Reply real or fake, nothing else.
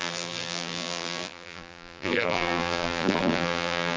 fake